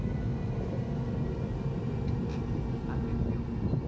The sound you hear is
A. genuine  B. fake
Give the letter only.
A